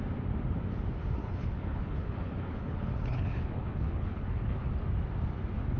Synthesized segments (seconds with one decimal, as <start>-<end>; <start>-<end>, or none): 1.2-4.7